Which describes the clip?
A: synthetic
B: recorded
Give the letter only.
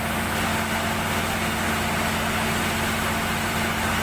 B